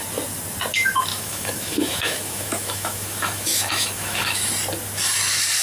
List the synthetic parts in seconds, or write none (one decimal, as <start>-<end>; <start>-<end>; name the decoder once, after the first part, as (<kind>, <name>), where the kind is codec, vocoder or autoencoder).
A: 1.1-4.5 (autoencoder, DAC-VAE)